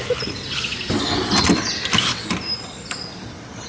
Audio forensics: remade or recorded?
recorded